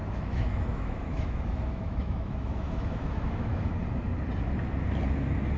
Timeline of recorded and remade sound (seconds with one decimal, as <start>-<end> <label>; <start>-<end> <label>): 0.0-3.8 remade; 3.8-5.6 recorded